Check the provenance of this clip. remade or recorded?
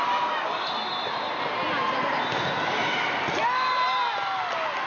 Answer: recorded